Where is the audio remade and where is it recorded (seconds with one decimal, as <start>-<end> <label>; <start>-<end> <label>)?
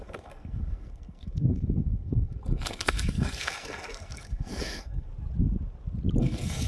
0.0-5.1 remade; 5.1-6.2 recorded; 6.2-6.7 remade